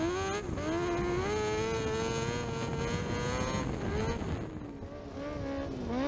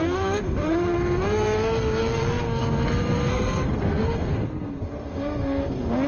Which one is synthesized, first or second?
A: second